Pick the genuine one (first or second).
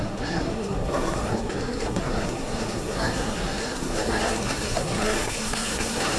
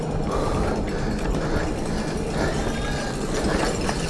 second